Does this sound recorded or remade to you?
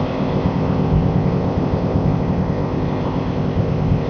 remade